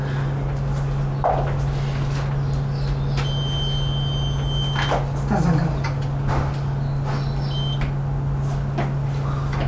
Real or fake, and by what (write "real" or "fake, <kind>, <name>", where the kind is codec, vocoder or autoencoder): real